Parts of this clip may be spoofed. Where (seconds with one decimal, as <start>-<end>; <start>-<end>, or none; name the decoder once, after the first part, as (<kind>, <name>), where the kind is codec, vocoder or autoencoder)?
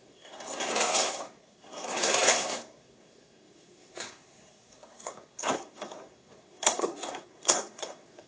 0.0-8.3 (codec, SNAC)